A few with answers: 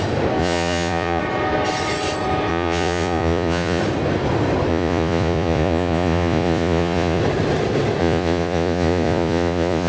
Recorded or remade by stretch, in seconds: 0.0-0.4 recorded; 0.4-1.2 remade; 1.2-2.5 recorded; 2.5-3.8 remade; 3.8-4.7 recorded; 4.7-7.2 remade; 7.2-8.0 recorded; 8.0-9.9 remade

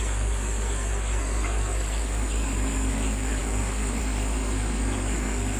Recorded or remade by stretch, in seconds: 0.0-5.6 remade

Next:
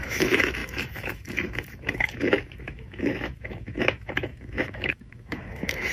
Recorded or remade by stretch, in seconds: 0.0-5.9 remade